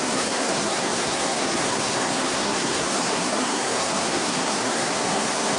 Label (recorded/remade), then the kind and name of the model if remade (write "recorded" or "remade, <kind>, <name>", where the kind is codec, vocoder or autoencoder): remade, codec, SNAC